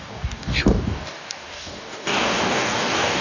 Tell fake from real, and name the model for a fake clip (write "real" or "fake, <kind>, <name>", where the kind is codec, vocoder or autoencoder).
fake, codec, DAC